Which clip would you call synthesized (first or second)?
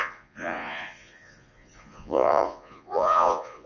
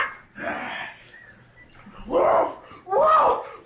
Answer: first